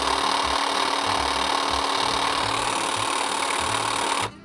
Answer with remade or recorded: recorded